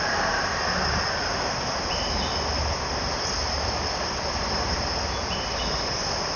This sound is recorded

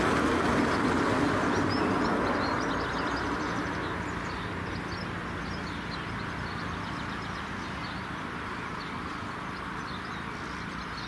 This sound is recorded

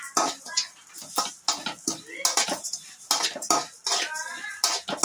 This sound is recorded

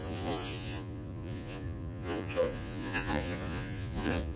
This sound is remade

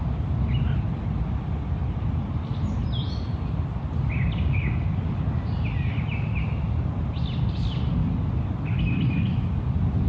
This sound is recorded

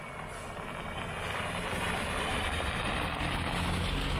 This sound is recorded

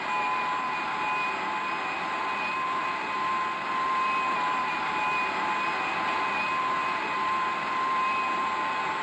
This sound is recorded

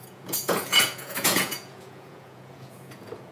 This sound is remade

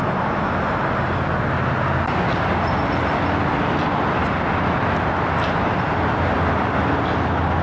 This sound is recorded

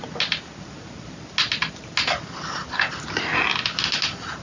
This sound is recorded